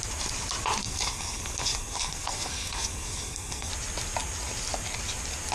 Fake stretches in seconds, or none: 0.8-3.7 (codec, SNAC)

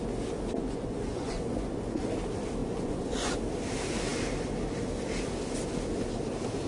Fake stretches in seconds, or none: 0.6-2.0 (vocoder, Vocos); 2.6-3.3

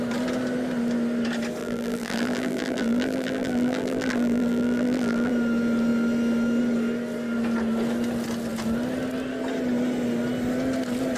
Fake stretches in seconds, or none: 1.6-5.3 (vocoder, BigVGAN v2)

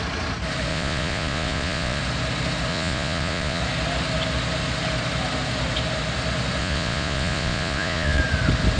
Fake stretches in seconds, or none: 0.7-2.0 (vocoder, Vocos); 2.7-3.6; 6.6-8.2